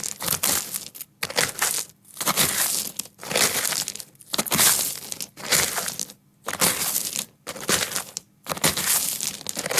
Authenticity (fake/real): real